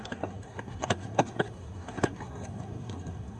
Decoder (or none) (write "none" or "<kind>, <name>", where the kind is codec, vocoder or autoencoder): codec, SNAC